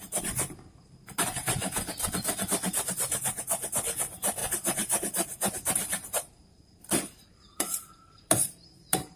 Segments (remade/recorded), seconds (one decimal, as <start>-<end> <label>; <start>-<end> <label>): 0.0-1.6 remade; 1.6-2.9 recorded; 2.9-9.2 remade